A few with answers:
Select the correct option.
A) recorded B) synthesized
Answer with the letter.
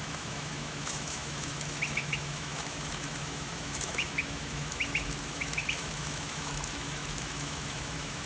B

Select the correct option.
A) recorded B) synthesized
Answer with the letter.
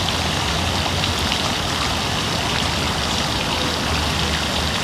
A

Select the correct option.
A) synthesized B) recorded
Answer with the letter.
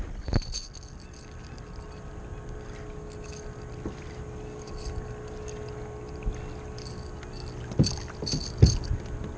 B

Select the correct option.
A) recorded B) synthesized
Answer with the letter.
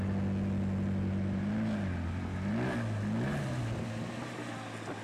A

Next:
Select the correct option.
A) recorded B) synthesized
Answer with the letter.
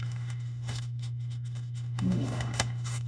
B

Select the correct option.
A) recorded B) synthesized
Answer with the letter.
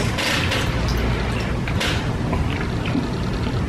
A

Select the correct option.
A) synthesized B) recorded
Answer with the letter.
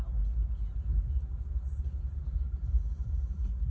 B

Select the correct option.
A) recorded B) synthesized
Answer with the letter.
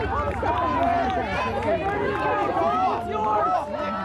A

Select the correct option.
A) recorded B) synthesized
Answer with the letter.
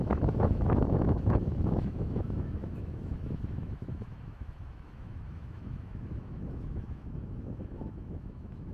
B